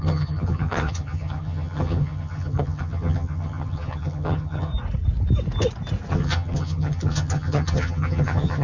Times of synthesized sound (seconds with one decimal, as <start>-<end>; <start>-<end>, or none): 0.0-4.7; 6.1-8.6